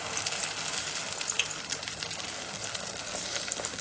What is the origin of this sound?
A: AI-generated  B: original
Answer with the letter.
B